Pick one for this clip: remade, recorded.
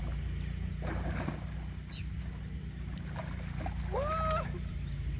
recorded